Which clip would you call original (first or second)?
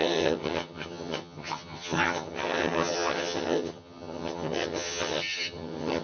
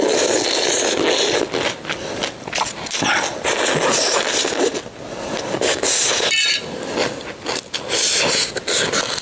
second